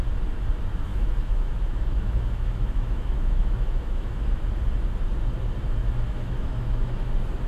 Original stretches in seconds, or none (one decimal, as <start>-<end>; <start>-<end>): 0.0-0.9; 4.4-5.8; 7.1-7.5